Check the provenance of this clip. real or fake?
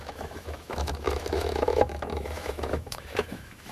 fake